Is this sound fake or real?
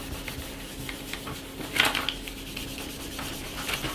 real